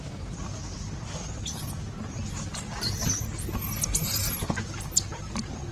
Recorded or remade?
recorded